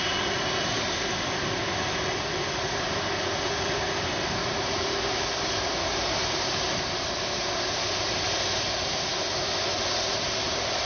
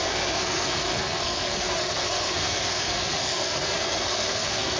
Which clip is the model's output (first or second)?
second